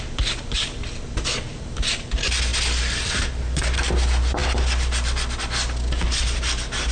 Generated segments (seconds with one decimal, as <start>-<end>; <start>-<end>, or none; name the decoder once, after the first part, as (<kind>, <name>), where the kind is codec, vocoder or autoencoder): none